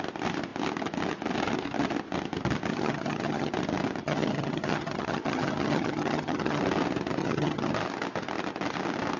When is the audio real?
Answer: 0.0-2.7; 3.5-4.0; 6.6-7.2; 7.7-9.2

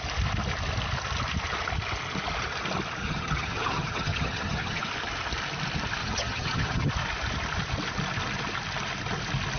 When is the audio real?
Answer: 0.0-3.0; 4.8-6.0; 6.9-9.6

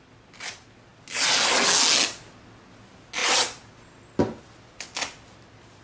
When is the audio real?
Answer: 0.0-5.8

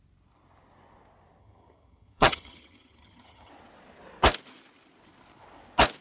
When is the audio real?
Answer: 0.0-1.4; 3.5-6.0

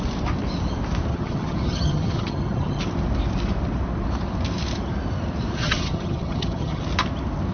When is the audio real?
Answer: 0.0-1.1; 2.8-5.6; 6.8-7.5

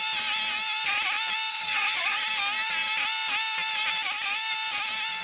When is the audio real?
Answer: 0.0-1.5; 2.2-5.2

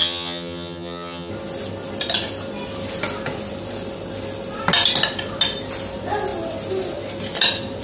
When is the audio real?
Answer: 1.3-7.8